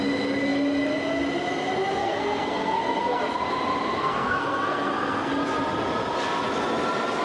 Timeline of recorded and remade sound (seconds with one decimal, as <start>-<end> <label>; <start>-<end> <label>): 0.0-2.0 recorded; 2.0-3.2 remade; 3.2-4.0 recorded; 4.0-5.3 remade; 5.3-7.2 recorded